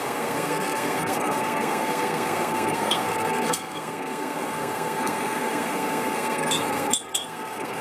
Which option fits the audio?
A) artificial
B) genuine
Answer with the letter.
A